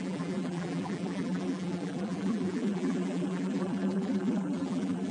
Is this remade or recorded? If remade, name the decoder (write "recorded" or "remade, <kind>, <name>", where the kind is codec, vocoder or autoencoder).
remade, vocoder, BigVGAN v2